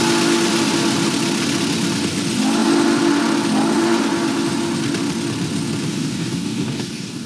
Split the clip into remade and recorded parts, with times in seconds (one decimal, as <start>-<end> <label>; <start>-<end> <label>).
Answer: 0.0-5.9 recorded; 5.9-7.3 remade